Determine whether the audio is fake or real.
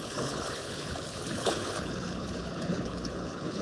fake